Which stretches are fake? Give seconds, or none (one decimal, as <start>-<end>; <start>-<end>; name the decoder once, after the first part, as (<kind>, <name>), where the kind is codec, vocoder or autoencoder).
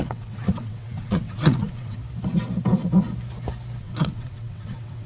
0.0-2.0 (vocoder, WaveNeXt); 3.8-5.1